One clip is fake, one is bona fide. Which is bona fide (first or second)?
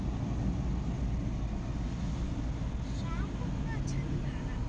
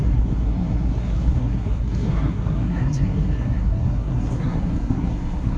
first